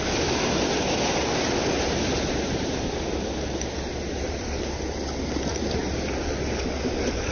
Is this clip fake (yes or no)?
no